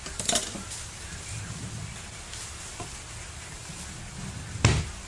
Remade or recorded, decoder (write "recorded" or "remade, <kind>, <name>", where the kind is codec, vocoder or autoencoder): recorded